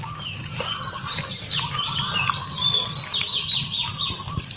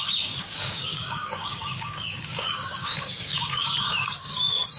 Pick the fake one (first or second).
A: second